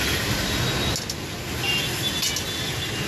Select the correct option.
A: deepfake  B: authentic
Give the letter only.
B